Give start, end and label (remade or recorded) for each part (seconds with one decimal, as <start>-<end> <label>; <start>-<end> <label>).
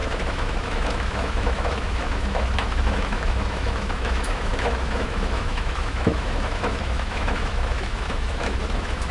0.0-9.1 remade